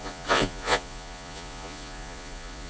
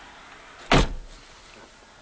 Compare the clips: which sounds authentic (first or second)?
second